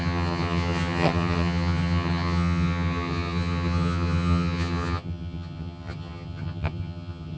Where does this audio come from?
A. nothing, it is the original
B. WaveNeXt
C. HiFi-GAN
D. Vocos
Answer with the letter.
C